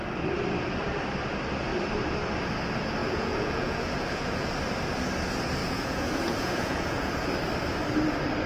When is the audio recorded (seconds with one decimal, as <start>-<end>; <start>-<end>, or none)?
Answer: 0.0-3.0; 4.5-5.6; 7.3-8.5